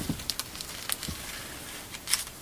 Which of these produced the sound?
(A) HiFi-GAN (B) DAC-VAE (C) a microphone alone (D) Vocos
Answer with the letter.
C